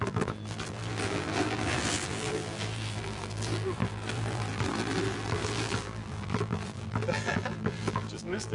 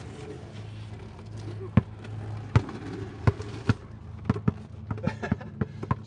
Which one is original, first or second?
second